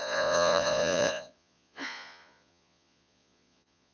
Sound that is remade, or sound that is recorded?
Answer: remade